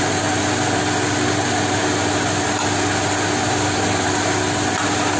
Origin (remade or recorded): recorded